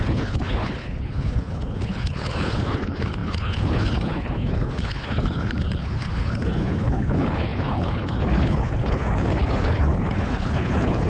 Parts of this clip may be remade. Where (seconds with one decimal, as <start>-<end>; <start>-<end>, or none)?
0.0-11.1